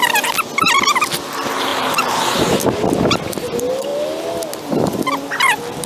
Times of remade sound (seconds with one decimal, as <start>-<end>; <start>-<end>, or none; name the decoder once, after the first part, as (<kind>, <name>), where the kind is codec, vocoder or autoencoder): none